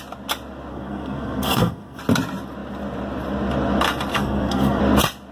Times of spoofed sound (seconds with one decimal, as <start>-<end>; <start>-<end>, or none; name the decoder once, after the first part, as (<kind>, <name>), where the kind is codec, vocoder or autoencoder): 0.7-2.0 (codec, SNAC); 4.1-4.8